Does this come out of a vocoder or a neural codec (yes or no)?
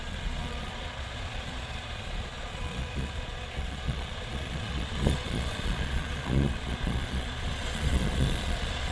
yes